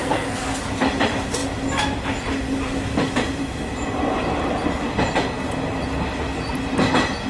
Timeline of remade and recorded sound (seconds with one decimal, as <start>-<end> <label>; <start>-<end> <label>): 0.0-0.6 remade; 0.6-7.3 recorded